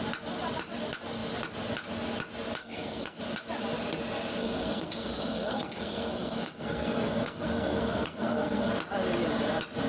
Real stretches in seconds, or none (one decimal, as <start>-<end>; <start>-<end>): 0.0-2.6; 3.2-4.4; 8.7-9.9